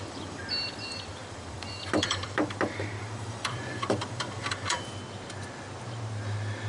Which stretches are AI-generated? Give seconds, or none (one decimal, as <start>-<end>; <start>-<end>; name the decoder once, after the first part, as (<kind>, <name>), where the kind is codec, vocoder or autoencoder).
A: 0.0-4.9 (vocoder, BigVGAN v2)

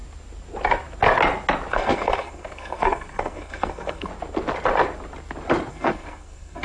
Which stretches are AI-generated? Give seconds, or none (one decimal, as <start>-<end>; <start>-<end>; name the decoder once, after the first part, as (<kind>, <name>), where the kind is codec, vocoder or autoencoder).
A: 1.7-4.1 (codec, SNAC); 5.7-6.6